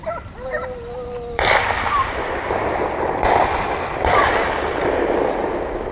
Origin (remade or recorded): recorded